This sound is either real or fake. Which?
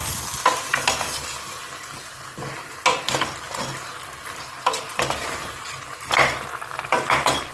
real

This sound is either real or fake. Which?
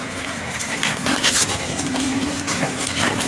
fake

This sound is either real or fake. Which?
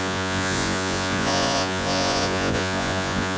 fake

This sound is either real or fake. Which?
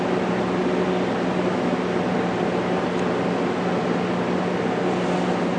real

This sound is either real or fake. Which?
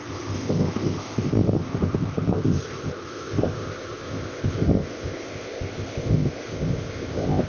fake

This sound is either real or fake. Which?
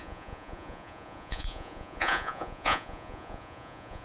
fake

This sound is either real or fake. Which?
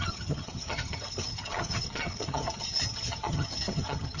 fake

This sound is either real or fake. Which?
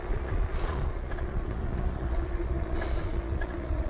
fake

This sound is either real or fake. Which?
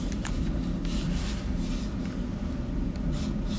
real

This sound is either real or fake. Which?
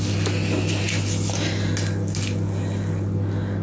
real